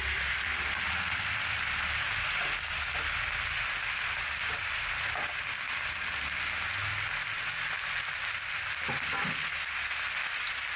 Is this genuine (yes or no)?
yes